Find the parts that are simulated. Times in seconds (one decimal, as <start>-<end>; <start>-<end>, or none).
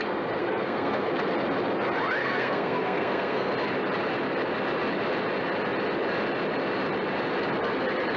0.4-1.1; 2.2-3.5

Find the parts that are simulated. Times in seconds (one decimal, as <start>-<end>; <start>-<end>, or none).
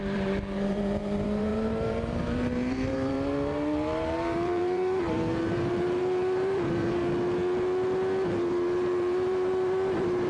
0.0-7.0; 8.5-10.3